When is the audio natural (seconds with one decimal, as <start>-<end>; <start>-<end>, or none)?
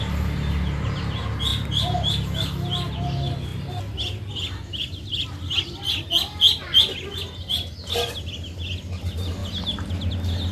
0.0-10.5